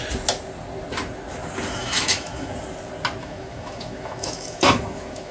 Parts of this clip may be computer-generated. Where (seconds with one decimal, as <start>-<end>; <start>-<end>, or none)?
1.8-2.5; 3.2-5.3